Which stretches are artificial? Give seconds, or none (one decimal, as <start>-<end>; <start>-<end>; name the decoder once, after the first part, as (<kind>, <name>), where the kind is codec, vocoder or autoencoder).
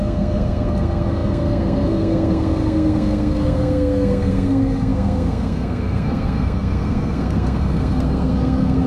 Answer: 0.0-8.9 (codec, SNAC)